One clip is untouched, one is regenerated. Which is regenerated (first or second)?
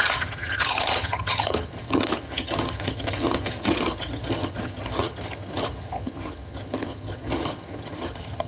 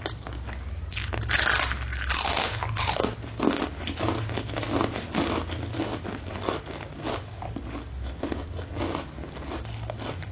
first